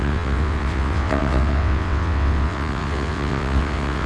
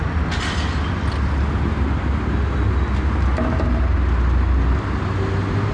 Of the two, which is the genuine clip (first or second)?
second